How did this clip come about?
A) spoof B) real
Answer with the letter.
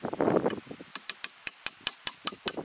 B